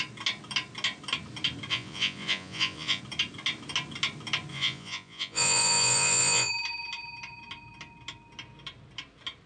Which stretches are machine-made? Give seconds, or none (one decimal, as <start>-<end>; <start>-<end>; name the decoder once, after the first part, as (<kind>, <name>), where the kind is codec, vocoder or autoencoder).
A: 1.7-3.0 (vocoder, Vocos); 4.5-6.5